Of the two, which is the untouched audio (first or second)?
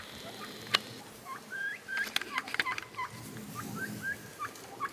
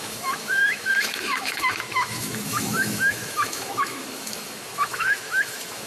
first